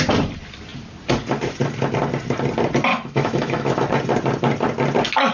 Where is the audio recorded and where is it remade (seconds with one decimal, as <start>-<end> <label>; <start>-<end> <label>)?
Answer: 0.0-2.9 recorded; 2.9-3.9 remade; 3.9-5.3 recorded